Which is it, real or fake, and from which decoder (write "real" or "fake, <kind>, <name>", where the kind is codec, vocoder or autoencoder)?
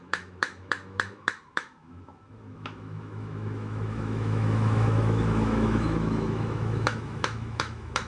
fake, autoencoder, DAC-VAE